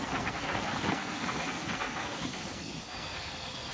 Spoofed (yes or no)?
yes